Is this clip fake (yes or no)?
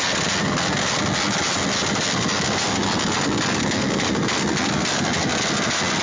no